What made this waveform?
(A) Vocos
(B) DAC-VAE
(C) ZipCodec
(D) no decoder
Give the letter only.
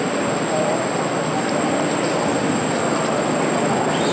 D